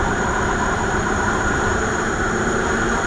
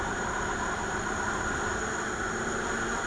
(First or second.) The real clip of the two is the second